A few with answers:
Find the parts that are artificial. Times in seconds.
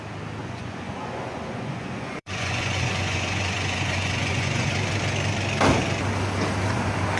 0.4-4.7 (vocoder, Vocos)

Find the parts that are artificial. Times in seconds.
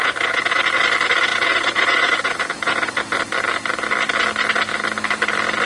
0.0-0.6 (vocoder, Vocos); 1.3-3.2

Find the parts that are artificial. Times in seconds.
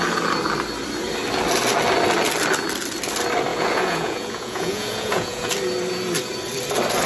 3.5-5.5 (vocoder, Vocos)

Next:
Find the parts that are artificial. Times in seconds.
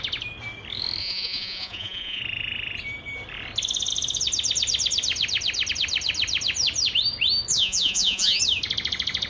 1.0-2.2 (vocoder, Vocos); 7.5-8.4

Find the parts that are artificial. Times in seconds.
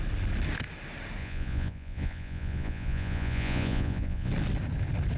1.2-4.3 (vocoder, Vocos)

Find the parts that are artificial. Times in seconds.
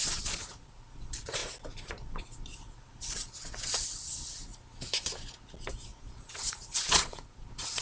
0.0-1.4 (vocoder, Vocos); 1.9-4.5; 5.7-7.8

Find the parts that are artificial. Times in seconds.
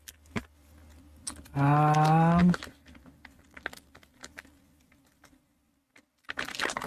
none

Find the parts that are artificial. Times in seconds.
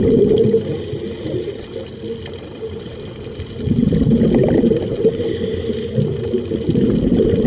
none